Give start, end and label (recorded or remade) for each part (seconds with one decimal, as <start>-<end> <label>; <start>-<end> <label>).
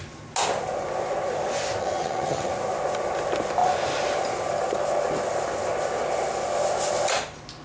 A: 0.0-1.8 recorded; 1.8-2.5 remade; 2.5-7.6 recorded